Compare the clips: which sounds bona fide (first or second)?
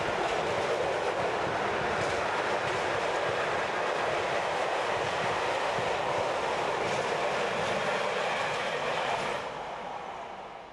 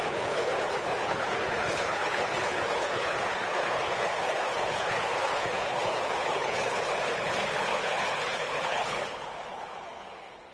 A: first